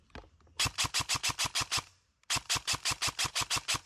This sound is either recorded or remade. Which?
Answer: recorded